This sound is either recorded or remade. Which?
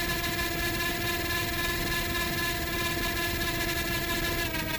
recorded